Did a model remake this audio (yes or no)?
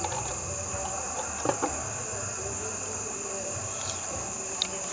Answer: no